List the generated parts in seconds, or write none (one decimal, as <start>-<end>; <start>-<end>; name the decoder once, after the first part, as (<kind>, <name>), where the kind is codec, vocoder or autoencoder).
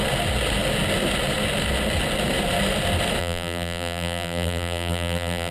3.2-5.5 (vocoder, BigVGAN v2)